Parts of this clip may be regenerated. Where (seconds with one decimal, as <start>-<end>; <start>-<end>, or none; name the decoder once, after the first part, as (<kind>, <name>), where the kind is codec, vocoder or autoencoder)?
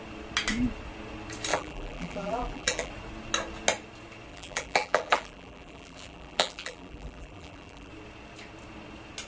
1.5-2.9 (vocoder, BigVGAN v2); 4.3-7.9